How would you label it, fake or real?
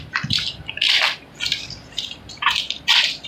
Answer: fake